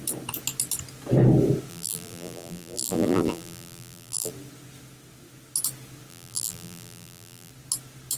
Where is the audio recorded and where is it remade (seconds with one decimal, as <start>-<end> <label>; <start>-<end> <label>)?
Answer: 0.0-1.7 recorded; 1.7-4.3 remade; 4.3-6.1 recorded; 6.1-7.5 remade; 7.5-8.2 recorded